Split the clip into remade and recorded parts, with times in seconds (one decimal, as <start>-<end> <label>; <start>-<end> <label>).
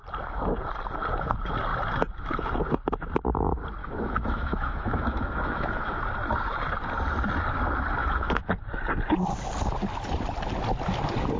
0.0-3.8 recorded; 3.8-6.0 remade; 6.0-8.0 recorded; 8.0-8.5 remade; 8.5-11.4 recorded